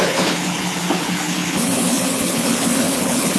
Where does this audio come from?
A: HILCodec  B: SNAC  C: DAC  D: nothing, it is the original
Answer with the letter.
A